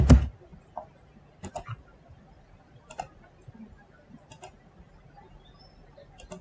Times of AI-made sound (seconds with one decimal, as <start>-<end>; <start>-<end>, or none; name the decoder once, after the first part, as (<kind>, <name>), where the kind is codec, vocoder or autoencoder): none